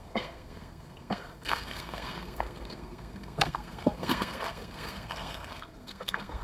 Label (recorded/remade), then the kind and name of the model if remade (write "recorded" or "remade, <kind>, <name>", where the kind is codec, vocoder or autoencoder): remade, codec, SNAC